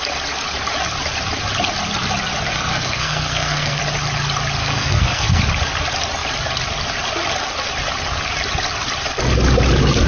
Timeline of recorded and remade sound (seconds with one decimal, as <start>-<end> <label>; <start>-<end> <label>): 0.0-2.5 recorded; 2.5-3.8 remade; 3.8-4.6 recorded; 4.6-5.4 remade; 5.4-10.1 recorded